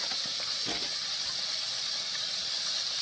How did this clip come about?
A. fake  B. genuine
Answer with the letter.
B